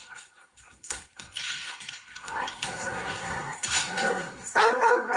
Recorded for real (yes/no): no